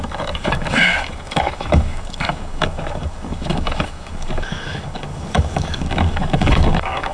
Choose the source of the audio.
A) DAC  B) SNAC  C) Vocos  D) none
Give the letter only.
A